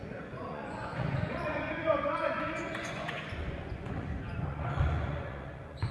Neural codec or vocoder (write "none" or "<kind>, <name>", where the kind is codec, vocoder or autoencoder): vocoder, Vocos